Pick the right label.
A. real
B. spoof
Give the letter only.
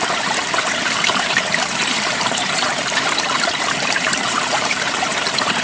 B